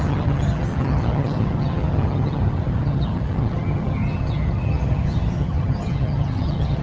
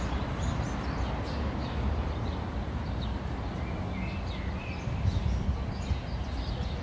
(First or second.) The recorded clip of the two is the second